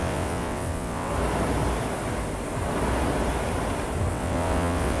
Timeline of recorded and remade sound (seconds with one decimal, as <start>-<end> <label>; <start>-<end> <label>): 0.0-1.1 remade; 1.1-4.1 recorded; 4.1-5.0 remade